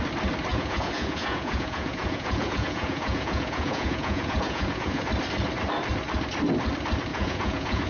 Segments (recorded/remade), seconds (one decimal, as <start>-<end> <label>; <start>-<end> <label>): 0.0-0.5 recorded; 0.5-5.1 remade; 5.1-7.1 recorded; 7.1-7.9 remade